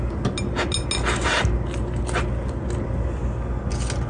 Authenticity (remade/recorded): recorded